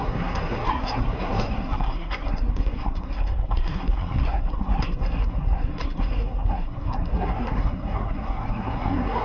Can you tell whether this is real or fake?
fake